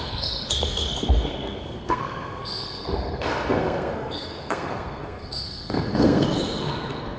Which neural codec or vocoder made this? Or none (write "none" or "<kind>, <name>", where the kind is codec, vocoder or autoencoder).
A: codec, SNAC